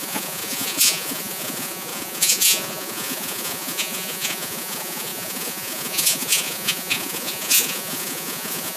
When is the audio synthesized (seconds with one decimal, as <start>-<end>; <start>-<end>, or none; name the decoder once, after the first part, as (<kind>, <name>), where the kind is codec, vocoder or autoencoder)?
0.0-8.8 (vocoder, Vocos)